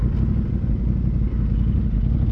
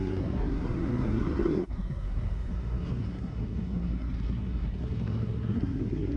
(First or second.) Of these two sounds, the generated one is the second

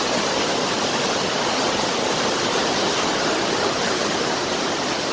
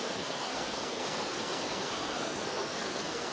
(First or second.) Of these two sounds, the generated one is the second